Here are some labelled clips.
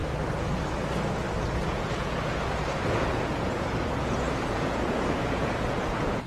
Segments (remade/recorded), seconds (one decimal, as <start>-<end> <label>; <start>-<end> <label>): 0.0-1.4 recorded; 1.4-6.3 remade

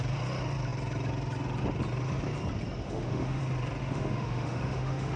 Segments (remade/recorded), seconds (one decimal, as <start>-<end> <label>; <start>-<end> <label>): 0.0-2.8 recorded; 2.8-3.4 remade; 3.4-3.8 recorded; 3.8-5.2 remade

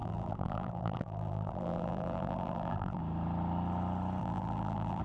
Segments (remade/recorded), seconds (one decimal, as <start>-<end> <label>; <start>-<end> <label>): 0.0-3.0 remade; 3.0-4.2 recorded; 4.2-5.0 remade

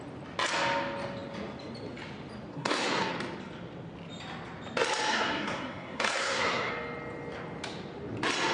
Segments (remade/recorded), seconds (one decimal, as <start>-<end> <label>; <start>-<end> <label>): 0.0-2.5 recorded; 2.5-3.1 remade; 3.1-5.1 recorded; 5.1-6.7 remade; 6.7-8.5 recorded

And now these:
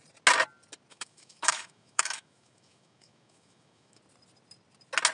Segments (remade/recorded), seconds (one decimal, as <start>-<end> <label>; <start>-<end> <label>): 0.0-0.9 recorded; 0.9-4.0 remade; 4.0-5.1 recorded

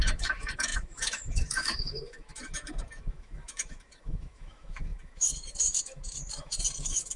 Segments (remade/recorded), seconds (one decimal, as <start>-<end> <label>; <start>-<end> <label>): 0.0-7.2 remade

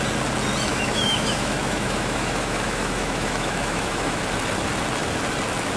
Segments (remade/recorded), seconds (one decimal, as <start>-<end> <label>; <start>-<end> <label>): 0.0-0.7 recorded; 0.7-4.2 remade; 4.2-5.8 recorded